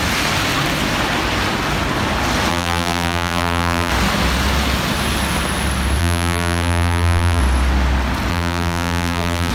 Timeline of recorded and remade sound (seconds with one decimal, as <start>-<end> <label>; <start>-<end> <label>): 0.0-2.5 recorded; 2.5-3.9 remade; 3.9-6.0 recorded; 6.0-7.4 remade; 7.4-8.3 recorded; 8.3-9.5 remade